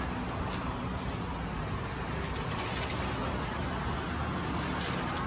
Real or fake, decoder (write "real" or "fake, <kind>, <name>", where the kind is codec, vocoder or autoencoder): real